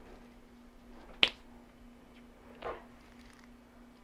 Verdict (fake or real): real